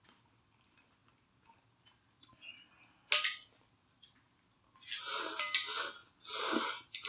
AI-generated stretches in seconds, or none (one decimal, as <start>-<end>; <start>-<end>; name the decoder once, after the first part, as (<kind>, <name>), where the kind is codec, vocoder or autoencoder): none